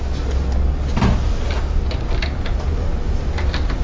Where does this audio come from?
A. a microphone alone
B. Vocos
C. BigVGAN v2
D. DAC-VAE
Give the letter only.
A